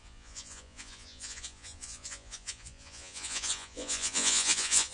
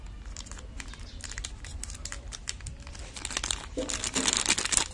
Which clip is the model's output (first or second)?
first